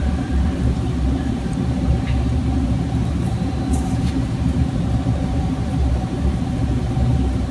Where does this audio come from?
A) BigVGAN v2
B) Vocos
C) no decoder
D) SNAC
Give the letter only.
A